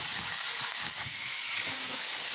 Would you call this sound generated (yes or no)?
yes